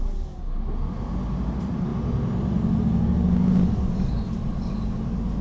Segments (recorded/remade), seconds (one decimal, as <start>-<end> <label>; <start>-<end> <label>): 0.0-5.4 recorded

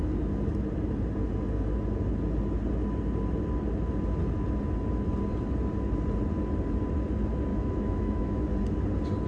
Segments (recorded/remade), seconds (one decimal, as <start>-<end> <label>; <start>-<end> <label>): 0.0-7.5 recorded; 7.5-8.4 remade; 8.4-9.3 recorded